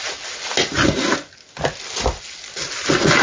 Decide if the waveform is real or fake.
real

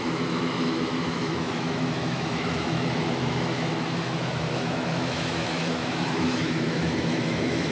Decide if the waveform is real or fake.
fake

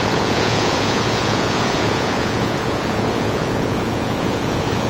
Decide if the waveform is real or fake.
fake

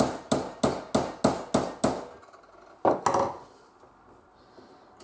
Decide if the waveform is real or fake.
real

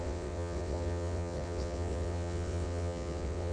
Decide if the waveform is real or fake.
fake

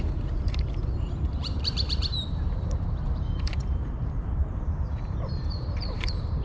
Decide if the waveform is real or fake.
fake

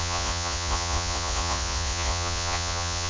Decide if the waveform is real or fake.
fake